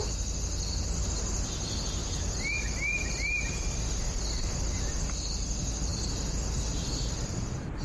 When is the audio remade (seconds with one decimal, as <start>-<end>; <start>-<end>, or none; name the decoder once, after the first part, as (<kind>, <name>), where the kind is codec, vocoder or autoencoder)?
none